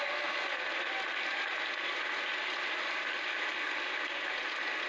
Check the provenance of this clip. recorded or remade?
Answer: recorded